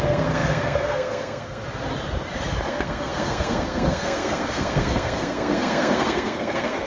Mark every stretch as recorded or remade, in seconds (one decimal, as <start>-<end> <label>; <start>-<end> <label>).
0.0-1.6 remade; 1.6-2.7 recorded; 2.7-6.9 remade